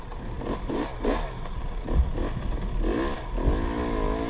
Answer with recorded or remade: recorded